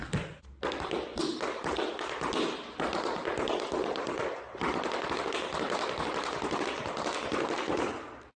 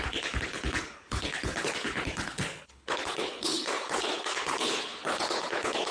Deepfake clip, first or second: second